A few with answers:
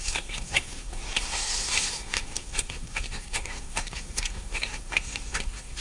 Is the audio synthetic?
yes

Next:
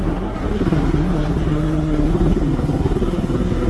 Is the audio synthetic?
yes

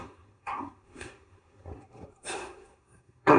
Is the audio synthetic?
yes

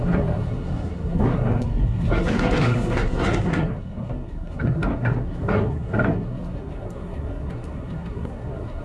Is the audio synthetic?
yes